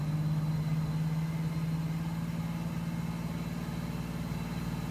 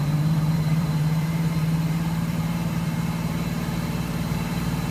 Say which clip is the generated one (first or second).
second